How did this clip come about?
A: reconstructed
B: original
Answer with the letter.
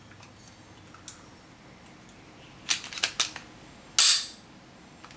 B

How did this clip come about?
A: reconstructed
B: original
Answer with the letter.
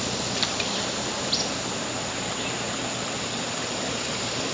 B